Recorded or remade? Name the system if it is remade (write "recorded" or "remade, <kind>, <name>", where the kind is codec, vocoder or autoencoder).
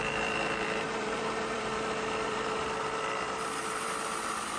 remade, vocoder, BigVGAN v2